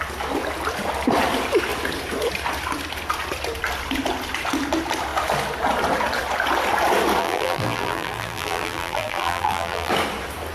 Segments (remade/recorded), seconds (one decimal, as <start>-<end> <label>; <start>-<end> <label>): 0.0-7.2 recorded; 7.2-9.9 remade; 9.9-10.5 recorded